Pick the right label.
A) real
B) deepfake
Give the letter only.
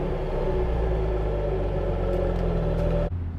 A